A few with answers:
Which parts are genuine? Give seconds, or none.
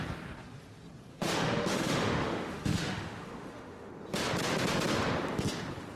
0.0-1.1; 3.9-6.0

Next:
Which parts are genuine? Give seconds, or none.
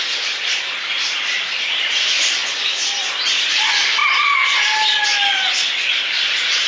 2.4-3.6; 4.0-5.5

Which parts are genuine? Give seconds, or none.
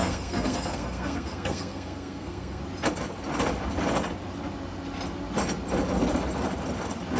2.6-7.2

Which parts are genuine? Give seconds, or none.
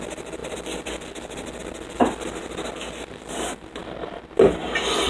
0.0-5.1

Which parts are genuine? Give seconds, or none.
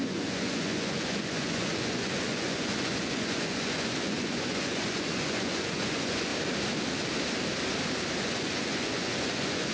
6.3-8.2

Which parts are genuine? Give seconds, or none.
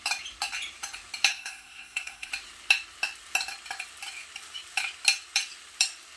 0.0-1.3; 2.3-6.2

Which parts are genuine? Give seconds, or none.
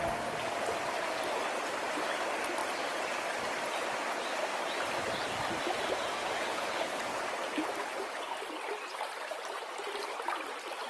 0.0-6.5; 7.0-10.9